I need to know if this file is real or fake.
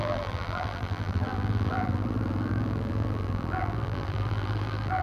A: fake